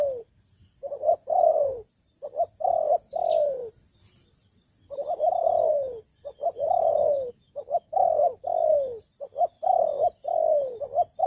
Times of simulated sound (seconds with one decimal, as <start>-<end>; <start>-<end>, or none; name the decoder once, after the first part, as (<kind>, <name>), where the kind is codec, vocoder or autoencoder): 3.6-5.3 (vocoder, BigVGAN v2); 6.1-7.3